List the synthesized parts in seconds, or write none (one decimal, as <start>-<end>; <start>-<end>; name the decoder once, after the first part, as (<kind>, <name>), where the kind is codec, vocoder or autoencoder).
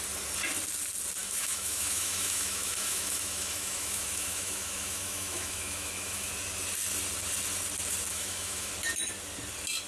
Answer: 1.2-6.3 (autoencoder, DAC-VAE); 8.1-8.7